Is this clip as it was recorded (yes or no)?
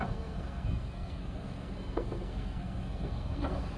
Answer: no